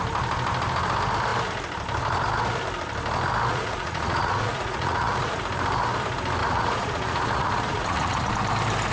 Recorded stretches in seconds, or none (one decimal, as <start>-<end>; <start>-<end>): 0.0-3.5; 5.4-6.4; 8.3-8.9